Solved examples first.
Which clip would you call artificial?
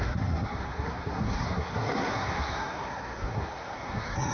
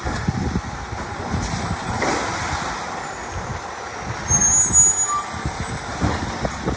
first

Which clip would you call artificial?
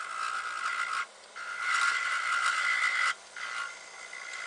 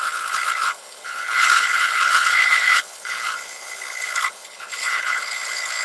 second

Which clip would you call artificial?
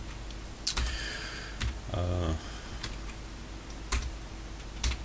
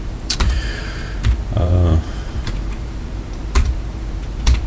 second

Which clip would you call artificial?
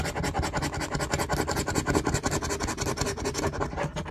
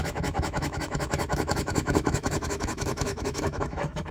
second